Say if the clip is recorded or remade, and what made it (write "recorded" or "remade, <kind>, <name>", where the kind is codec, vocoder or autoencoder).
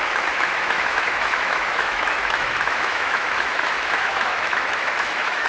remade, autoencoder, DAC-VAE